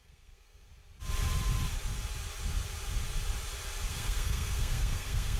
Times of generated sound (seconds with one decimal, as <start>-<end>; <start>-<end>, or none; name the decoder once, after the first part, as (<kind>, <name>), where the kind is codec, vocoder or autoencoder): 0.0-0.7 (codec, SNAC); 3.9-5.4